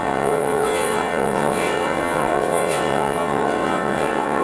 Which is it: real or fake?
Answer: fake